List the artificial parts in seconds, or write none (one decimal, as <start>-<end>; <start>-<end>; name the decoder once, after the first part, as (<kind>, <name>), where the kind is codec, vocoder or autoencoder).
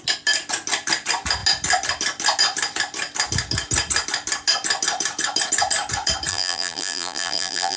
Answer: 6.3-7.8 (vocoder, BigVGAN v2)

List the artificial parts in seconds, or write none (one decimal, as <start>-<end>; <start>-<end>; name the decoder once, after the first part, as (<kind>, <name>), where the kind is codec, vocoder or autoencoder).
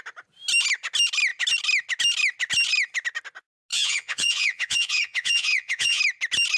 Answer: 3.7-6.0 (vocoder, Vocos)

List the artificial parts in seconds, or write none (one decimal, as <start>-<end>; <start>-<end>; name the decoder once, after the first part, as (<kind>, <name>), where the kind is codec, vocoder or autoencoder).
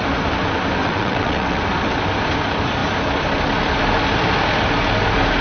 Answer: 0.8-1.6 (vocoder, WaveNeXt)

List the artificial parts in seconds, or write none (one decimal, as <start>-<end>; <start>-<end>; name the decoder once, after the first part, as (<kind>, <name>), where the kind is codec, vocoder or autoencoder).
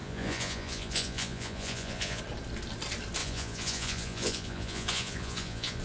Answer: 0.0-2.2 (vocoder, Vocos); 3.2-5.8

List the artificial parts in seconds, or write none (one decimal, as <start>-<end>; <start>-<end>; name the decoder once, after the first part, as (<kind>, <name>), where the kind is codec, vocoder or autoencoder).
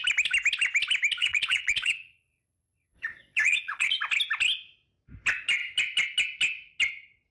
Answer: 1.2-4.0 (vocoder, Vocos)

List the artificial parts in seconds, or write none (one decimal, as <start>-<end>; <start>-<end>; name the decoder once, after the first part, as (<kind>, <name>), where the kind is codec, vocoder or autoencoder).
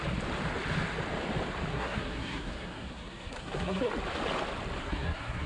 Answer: 1.7-3.9 (codec, SNAC); 4.8-5.5